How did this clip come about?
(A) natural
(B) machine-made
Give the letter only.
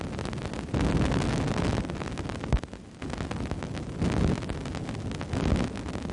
A